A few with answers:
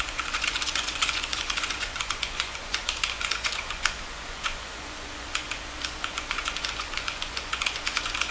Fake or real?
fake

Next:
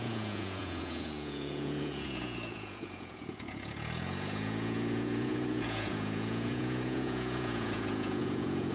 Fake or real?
fake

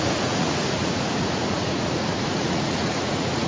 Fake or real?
fake